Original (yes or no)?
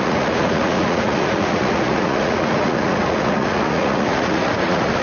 no